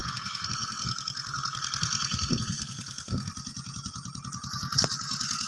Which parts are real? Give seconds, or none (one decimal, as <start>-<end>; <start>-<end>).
3.3-5.5